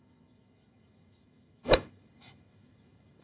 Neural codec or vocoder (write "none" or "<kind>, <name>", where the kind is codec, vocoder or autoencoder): autoencoder, DAC-VAE